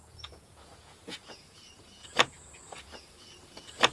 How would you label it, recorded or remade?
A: remade